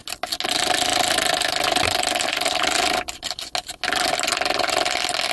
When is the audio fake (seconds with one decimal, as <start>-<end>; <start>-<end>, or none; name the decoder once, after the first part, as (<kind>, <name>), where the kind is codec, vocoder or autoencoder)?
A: none